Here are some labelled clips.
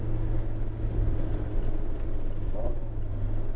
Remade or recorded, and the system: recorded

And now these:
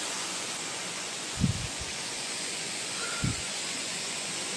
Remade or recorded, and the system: remade, vocoder, Vocos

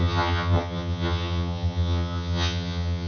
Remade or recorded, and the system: remade, vocoder, HiFi-GAN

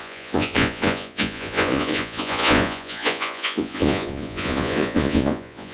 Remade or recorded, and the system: remade, vocoder, Vocos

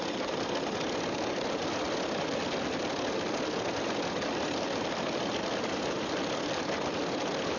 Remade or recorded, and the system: recorded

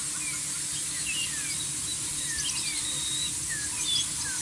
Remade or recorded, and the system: recorded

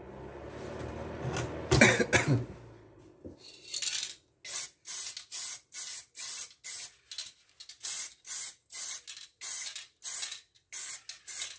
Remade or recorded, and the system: recorded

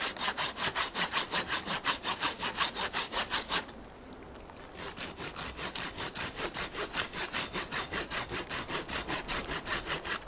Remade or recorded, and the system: recorded